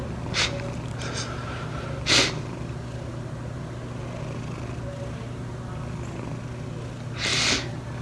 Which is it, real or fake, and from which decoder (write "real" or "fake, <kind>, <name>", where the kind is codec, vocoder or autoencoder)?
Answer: real